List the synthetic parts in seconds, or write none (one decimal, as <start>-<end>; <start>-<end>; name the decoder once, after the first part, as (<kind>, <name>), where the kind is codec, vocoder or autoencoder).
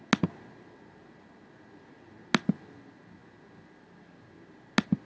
none